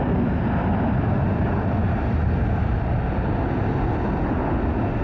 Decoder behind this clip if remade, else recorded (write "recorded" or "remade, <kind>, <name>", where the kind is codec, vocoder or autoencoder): recorded